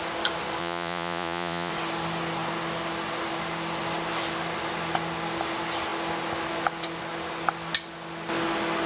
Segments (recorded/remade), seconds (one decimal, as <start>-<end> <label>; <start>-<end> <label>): 0.0-0.6 recorded; 0.6-1.7 remade; 1.7-8.9 recorded